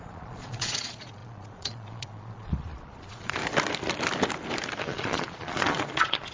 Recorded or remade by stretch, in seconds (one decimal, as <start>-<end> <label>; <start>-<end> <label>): 0.0-3.4 remade; 3.4-4.8 recorded; 4.8-6.3 remade